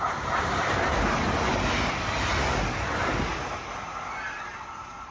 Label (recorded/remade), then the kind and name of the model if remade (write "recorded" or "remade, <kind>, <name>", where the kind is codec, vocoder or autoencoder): recorded